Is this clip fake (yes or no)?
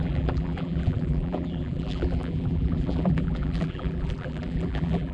yes